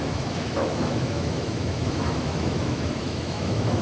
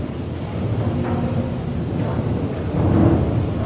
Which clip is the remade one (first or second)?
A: first